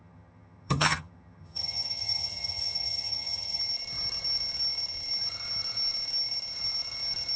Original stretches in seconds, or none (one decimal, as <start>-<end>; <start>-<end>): 3.6-7.4